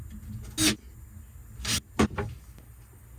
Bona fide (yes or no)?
yes